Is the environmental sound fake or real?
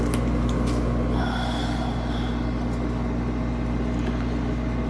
real